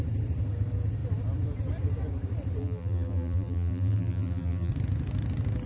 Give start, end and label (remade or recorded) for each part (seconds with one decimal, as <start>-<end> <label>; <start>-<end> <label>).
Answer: 0.0-2.6 recorded; 2.6-4.7 remade; 4.7-5.7 recorded